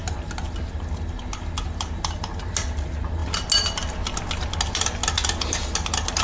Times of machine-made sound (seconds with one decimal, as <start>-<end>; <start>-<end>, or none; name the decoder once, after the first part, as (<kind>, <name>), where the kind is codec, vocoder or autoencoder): none